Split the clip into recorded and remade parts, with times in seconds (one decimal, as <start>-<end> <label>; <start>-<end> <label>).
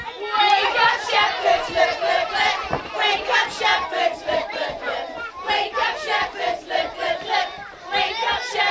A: 0.0-4.1 recorded; 4.1-8.7 remade